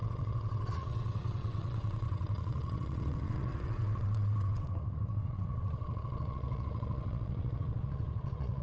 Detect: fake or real fake